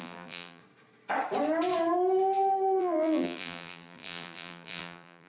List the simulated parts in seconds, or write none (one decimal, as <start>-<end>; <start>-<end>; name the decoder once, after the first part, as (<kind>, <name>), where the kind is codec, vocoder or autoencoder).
0.0-0.6 (vocoder, BigVGAN v2); 2.8-5.3